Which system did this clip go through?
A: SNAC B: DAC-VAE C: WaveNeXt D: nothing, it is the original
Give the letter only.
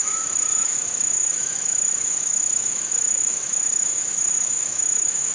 B